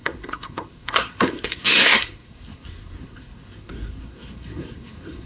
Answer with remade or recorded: remade